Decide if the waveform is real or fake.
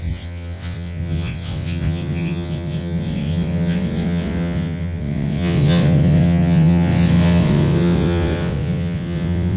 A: fake